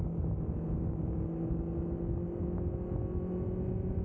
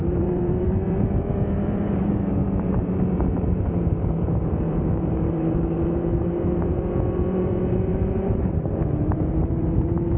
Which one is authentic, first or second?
first